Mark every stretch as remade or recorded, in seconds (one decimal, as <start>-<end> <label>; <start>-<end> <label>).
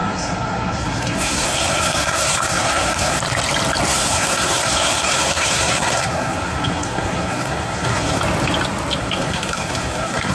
0.0-3.2 remade; 3.2-3.9 recorded; 3.9-8.2 remade; 8.2-9.0 recorded; 9.0-10.3 remade